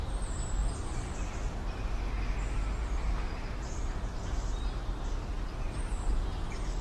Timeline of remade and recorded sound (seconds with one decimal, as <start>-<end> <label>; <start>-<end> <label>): 0.0-0.6 remade; 0.6-3.2 recorded; 3.2-6.8 remade